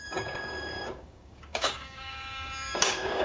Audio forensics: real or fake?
fake